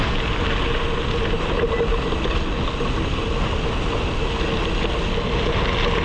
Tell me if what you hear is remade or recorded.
recorded